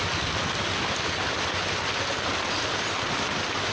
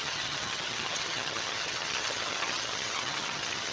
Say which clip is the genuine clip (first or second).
first